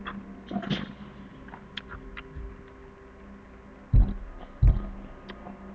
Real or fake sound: real